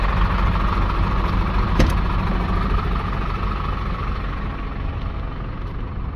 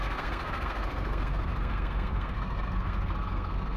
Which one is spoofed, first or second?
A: second